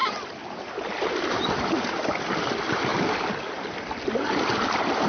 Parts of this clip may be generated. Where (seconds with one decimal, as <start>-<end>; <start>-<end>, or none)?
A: 0.0-2.2